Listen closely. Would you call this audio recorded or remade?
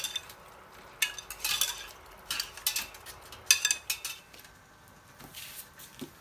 recorded